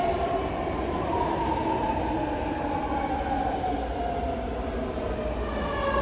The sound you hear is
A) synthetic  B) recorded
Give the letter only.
B